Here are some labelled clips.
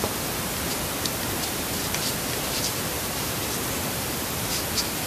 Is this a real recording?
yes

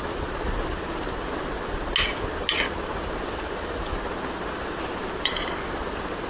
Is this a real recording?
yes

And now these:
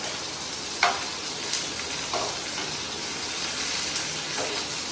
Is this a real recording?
yes